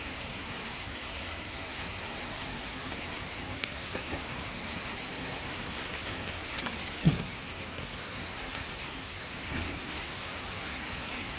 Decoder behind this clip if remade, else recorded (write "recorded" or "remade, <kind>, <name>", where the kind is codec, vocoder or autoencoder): remade, codec, SNAC